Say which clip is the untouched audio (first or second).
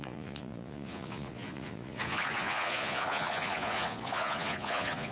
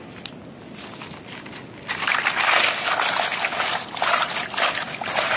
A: second